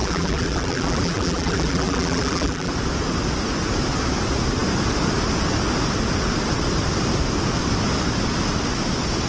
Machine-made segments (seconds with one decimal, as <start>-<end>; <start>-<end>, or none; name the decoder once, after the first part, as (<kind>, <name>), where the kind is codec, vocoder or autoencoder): 0.0-2.7 (vocoder, BigVGAN v2)